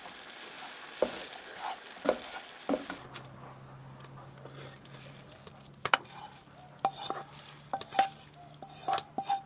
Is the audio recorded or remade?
recorded